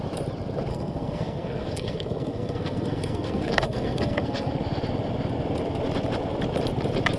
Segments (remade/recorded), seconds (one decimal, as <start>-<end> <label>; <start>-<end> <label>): 0.0-0.7 recorded; 0.7-4.5 remade; 4.5-7.2 recorded